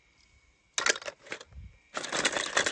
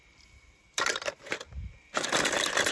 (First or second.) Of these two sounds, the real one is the first